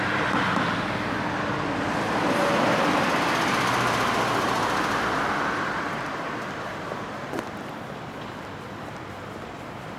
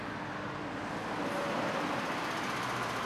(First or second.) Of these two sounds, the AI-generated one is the first